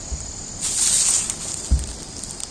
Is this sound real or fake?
real